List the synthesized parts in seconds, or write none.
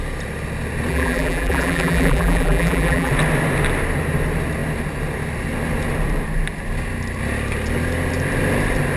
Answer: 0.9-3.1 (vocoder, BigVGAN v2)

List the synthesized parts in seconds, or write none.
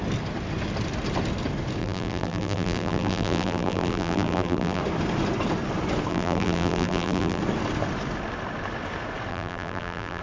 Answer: 1.8-4.8 (vocoder, BigVGAN v2); 6.1-7.4; 9.3-10.2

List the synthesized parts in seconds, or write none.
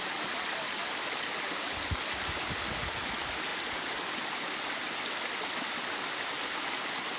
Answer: none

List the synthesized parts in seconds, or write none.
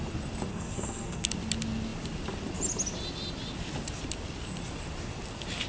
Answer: 0.5-1.3 (codec, SNAC)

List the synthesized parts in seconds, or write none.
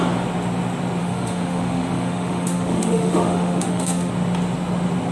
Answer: 1.0-4.1 (autoencoder, DAC-VAE)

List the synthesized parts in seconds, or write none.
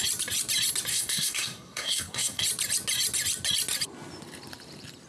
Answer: 0.9-2.4 (codec, SNAC)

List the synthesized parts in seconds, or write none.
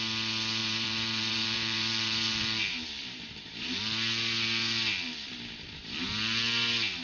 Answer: 0.6-3.8 (vocoder, BigVGAN v2)